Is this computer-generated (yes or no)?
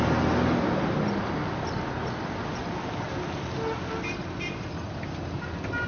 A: no